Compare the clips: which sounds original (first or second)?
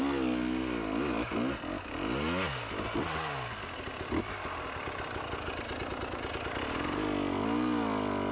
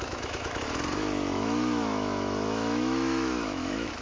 first